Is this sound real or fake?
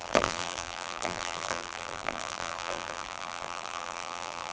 fake